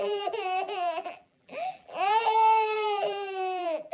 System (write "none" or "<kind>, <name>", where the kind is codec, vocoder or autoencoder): vocoder, BigVGAN v2